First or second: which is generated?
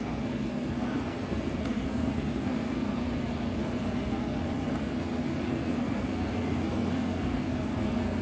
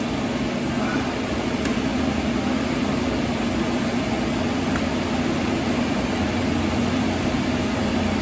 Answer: first